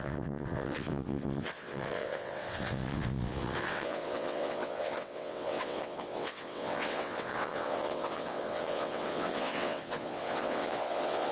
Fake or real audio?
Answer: fake